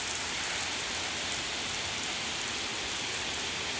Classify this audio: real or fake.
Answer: real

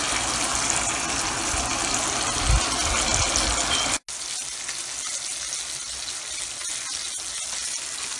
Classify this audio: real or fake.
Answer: real